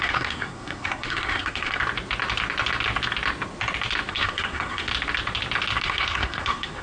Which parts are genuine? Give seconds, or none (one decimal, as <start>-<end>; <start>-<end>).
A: 1.8-4.1; 4.9-5.8